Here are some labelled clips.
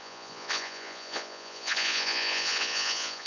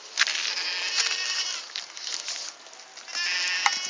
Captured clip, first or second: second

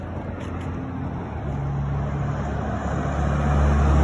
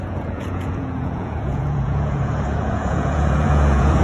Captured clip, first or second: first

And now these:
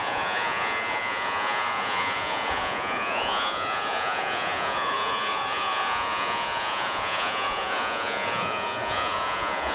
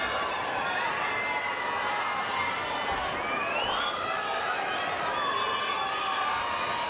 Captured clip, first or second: second